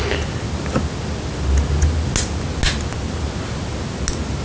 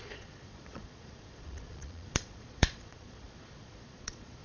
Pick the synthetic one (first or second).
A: second